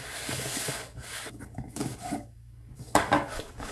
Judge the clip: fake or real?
fake